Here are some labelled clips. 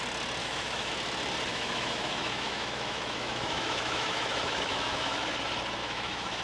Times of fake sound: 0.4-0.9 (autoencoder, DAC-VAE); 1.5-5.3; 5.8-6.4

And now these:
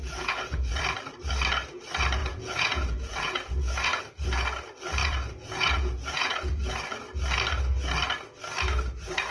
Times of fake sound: 0.0-0.8 (vocoder, Vocos); 2.2-4.0; 5.0-6.7

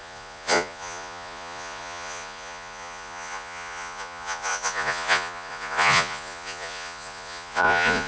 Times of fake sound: 0.0-8.1 (vocoder, Vocos)

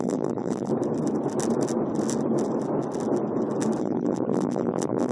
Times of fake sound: 0.0-0.7 (vocoder, BigVGAN v2); 3.8-5.1